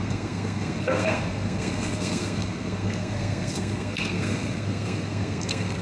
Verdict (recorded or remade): remade